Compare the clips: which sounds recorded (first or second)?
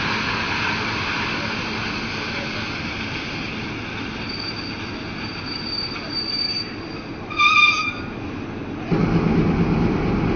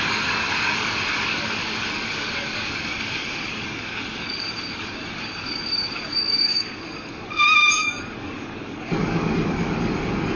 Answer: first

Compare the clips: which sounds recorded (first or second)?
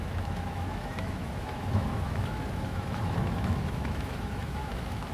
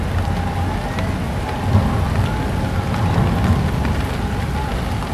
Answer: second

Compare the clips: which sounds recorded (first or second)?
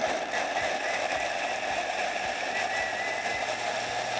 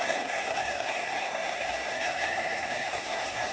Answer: first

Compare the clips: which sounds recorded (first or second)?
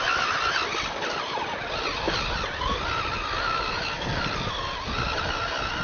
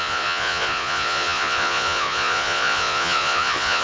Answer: first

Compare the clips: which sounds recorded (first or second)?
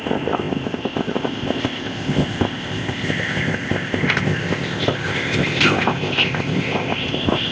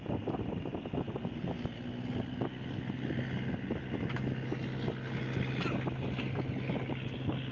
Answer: second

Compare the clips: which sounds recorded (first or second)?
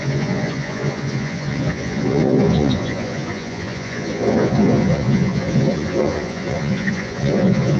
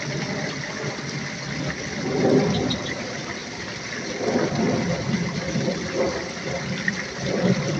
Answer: second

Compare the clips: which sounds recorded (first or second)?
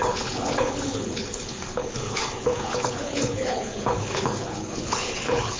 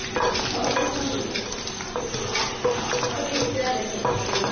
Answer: second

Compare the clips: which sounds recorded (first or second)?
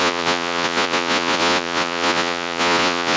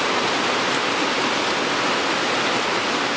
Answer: second